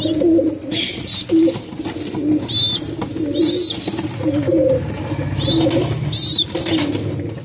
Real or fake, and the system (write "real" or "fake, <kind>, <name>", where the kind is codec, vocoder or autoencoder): real